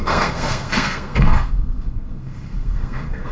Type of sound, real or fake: fake